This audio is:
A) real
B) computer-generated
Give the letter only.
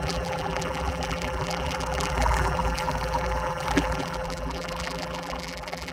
B